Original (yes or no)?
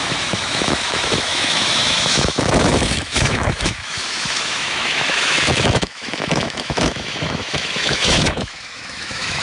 no